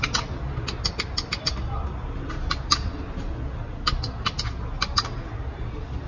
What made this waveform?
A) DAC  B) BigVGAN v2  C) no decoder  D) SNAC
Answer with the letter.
C